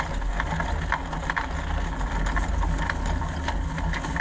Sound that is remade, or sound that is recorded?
recorded